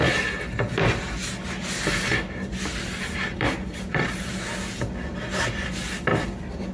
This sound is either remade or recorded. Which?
recorded